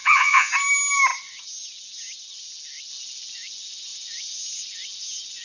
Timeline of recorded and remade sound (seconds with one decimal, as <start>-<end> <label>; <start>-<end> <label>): 0.0-0.5 remade; 0.5-5.4 recorded